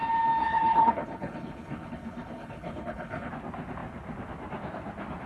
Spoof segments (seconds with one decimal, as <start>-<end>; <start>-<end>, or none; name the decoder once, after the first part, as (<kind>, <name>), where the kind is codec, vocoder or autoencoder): 0.4-3.3 (codec, HILCodec)